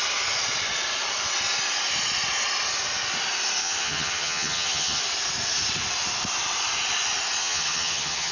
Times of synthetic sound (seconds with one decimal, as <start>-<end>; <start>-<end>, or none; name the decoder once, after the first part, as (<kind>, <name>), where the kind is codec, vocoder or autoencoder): 3.6-5.0 (vocoder, HiFi-GAN); 7.4-8.3

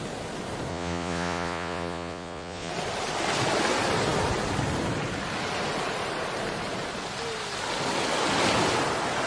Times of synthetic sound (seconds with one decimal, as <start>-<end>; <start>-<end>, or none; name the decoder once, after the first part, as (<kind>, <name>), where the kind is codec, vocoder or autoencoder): 0.7-2.7 (vocoder, Vocos)